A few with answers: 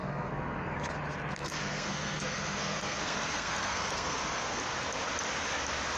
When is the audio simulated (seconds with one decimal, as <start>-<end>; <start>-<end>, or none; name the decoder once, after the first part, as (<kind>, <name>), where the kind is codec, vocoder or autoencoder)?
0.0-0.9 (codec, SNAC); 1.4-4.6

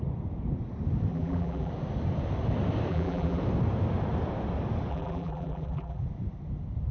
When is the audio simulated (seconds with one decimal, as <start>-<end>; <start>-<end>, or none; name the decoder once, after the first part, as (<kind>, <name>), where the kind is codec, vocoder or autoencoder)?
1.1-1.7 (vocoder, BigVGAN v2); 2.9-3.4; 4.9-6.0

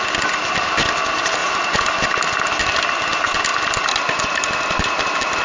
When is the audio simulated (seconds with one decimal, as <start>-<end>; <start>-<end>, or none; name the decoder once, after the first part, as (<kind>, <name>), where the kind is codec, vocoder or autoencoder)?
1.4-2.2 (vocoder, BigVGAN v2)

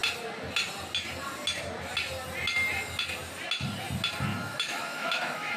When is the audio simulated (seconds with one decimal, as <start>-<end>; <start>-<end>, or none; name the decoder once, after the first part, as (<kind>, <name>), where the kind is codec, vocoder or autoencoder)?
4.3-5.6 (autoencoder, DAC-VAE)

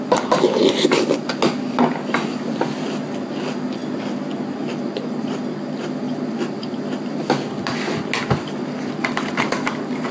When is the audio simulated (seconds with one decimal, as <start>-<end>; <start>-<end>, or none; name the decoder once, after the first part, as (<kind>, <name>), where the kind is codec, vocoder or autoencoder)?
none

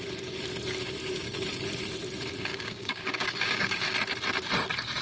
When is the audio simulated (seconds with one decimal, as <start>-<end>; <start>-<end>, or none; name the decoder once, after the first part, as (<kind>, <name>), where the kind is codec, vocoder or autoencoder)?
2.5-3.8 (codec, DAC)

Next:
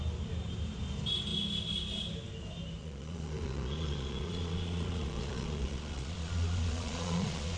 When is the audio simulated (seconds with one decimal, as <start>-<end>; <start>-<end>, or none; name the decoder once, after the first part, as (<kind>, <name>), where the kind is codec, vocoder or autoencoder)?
2.8-7.6 (vocoder, Vocos)